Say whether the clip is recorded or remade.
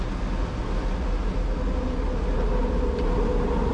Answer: recorded